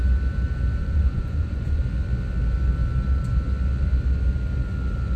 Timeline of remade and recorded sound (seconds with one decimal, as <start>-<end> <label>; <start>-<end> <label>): 0.0-0.8 recorded; 0.8-1.8 remade; 1.8-5.2 recorded